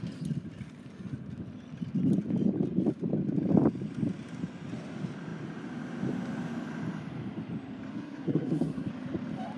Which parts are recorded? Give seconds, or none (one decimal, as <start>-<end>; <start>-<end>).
0.0-7.9; 8.9-9.6